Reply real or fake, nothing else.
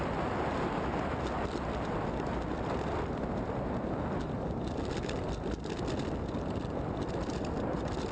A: real